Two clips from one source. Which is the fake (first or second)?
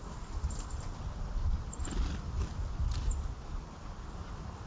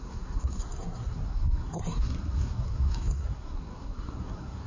second